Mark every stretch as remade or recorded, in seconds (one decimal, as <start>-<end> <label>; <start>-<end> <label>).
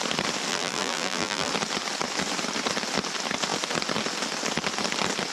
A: 0.0-0.5 recorded; 0.5-1.5 remade; 1.5-5.3 recorded